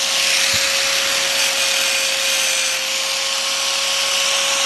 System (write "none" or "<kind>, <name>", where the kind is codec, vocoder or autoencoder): none